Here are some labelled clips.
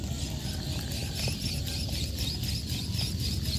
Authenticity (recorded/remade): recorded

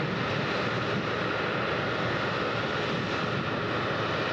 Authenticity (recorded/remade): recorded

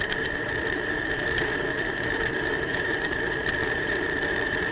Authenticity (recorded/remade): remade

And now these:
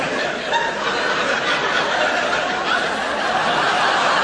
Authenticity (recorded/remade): recorded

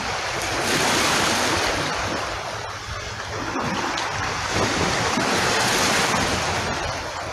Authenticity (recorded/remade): recorded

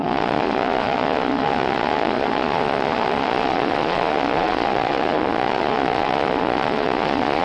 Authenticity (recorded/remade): remade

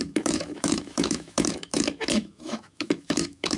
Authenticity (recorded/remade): remade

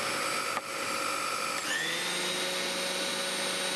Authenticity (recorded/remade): recorded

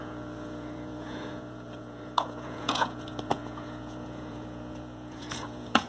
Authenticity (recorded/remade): remade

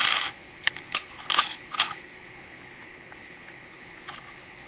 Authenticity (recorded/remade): remade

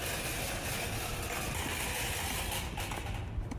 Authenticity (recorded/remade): recorded